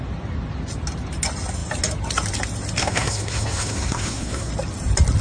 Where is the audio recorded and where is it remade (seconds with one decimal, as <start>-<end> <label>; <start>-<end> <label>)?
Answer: 0.0-2.8 recorded; 2.8-4.5 remade; 4.5-5.2 recorded